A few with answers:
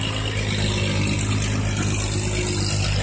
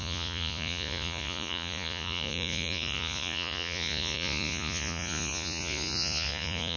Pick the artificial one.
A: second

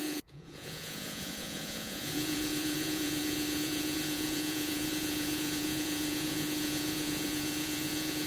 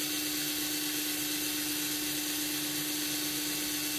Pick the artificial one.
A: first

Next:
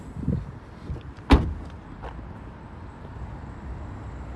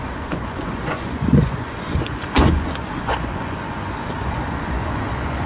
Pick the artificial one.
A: second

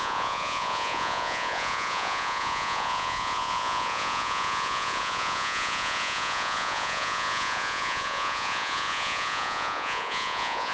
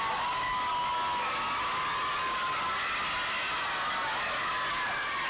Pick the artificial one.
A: first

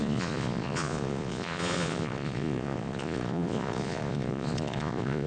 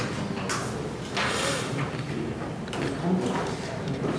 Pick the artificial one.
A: first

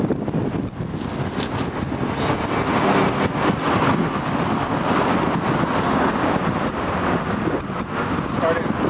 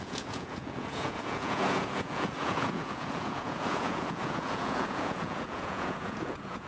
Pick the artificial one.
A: second